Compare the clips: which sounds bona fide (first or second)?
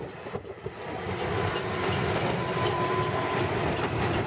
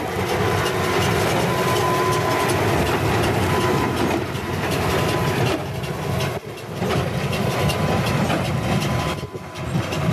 second